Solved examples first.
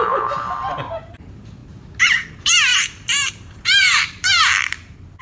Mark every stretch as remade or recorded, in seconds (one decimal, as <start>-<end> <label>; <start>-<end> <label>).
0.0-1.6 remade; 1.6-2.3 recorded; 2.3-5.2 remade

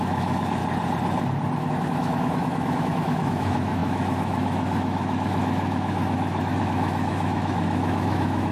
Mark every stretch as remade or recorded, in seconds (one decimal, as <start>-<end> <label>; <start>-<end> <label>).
0.0-0.6 remade; 0.6-1.7 recorded; 1.7-8.5 remade

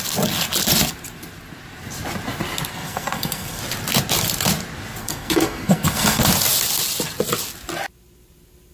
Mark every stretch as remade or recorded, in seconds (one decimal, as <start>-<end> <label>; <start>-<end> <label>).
0.0-2.7 recorded; 2.7-3.6 remade; 3.6-5.0 recorded; 5.0-6.2 remade; 6.2-8.7 recorded

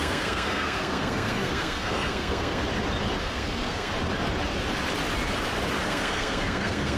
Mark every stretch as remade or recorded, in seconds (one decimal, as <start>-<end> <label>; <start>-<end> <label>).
0.0-2.6 remade; 2.6-3.2 recorded; 3.2-3.9 remade; 3.9-5.9 recorded; 5.9-7.0 remade